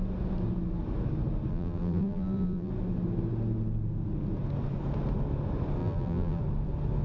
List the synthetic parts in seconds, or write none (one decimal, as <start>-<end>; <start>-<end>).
1.5-2.7; 5.8-6.4